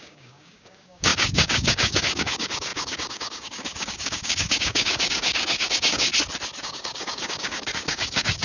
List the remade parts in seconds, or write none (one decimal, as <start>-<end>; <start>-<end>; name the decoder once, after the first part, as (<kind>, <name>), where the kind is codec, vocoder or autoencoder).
0.0-6.1 (codec, DAC); 6.6-8.4